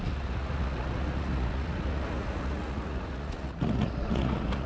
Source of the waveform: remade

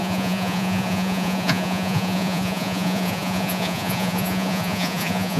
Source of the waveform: remade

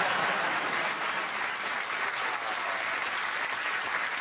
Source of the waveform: recorded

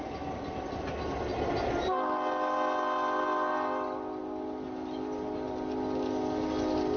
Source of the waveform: recorded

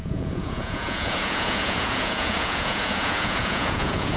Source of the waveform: remade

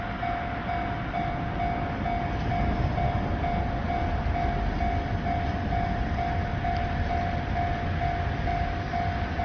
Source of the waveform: recorded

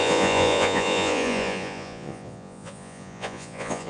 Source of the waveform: remade